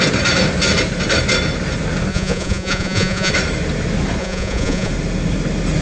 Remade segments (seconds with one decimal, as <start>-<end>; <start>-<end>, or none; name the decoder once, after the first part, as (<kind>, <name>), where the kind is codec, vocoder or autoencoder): 2.1-3.3 (vocoder, Vocos); 4.2-4.9